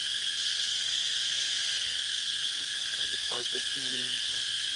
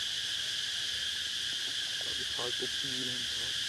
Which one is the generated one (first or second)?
first